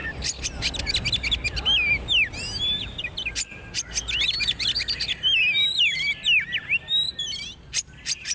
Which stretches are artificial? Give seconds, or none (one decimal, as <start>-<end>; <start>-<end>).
none